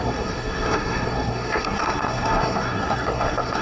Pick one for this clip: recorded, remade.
remade